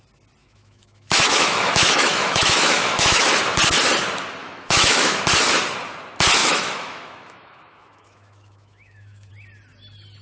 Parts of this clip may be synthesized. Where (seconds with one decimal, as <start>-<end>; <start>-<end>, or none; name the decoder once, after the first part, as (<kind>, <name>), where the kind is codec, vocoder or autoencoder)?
0.4-3.4 (autoencoder, DAC-VAE); 4.4-5.2; 6.4-9.3